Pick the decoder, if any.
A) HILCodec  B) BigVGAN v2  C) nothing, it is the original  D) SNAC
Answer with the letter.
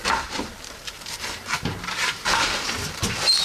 B